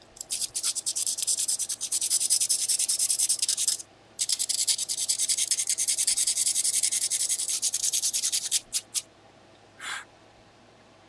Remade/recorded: remade